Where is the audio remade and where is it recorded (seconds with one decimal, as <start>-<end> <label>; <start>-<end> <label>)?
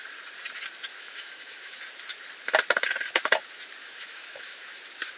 0.0-0.9 recorded; 0.9-1.8 remade; 1.8-3.8 recorded; 3.8-4.8 remade; 4.8-5.2 recorded